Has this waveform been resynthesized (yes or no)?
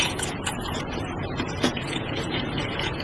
yes